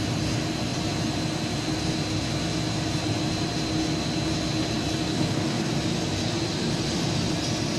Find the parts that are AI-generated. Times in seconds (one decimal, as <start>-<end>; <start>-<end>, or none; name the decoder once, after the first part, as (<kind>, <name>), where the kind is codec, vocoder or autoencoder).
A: 5.1-5.7 (codec, DAC)